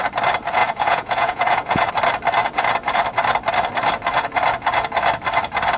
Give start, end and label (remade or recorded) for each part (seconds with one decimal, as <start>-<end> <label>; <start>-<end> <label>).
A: 0.0-0.6 recorded; 0.6-1.9 remade; 1.9-5.8 recorded

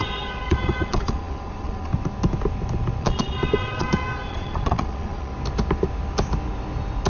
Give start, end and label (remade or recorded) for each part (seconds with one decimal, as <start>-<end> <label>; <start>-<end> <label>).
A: 0.0-1.9 remade; 1.9-3.0 recorded; 3.0-5.3 remade; 5.3-7.1 recorded

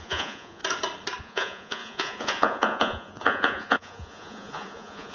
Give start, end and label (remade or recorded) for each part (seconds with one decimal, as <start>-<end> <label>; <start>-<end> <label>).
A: 0.0-0.6 remade; 0.6-1.2 recorded; 1.2-5.1 remade

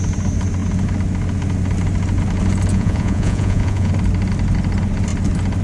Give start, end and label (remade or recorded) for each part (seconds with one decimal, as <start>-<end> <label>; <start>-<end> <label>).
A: 0.0-2.7 recorded; 2.7-3.9 remade; 3.9-5.6 recorded